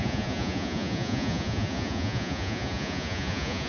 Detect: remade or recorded remade